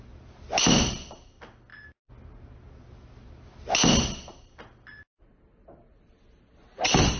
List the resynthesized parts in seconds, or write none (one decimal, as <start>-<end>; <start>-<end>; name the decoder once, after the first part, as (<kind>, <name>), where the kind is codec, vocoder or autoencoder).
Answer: none

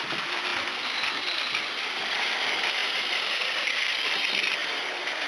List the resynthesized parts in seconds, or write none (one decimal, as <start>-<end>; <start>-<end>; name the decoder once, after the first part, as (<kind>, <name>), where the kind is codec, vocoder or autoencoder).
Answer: 2.8-3.5 (vocoder, BigVGAN v2); 4.6-5.3

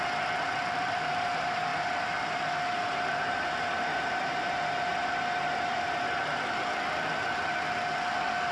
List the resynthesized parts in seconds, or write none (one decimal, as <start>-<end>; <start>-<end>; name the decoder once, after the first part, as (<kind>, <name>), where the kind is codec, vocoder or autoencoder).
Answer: 0.0-1.7 (vocoder, BigVGAN v2); 5.1-8.5

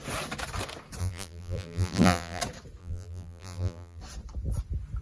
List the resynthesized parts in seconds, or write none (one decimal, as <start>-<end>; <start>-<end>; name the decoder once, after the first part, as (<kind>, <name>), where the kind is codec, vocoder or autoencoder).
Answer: 1.0-2.4 (vocoder, BigVGAN v2); 2.8-4.0

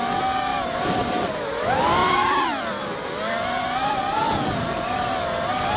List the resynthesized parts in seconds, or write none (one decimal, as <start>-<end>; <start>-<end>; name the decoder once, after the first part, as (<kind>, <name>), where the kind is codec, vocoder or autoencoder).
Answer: 2.0-4.2 (vocoder, BigVGAN v2)

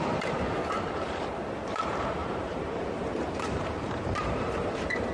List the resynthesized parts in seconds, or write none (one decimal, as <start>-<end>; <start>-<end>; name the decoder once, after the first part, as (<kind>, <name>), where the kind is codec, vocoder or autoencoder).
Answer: 2.2-5.1 (vocoder, BigVGAN v2)

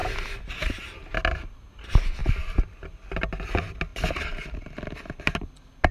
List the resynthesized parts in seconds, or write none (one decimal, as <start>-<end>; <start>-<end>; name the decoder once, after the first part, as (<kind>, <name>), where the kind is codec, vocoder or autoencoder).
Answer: none